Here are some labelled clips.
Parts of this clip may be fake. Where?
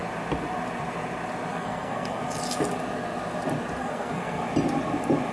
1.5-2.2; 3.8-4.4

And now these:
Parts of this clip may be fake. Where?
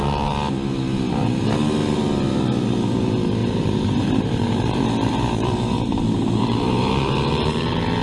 3.4-7.4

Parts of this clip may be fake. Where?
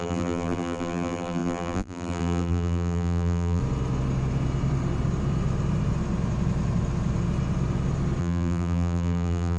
0.0-3.6; 8.2-9.6